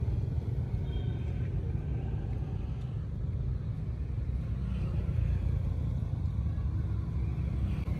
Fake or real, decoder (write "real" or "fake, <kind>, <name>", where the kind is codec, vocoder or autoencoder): real